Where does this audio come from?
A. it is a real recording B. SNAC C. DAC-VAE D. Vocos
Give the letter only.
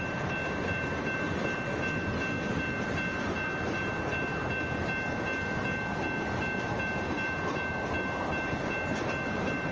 A